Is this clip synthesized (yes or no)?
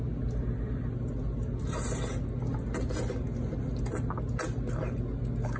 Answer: no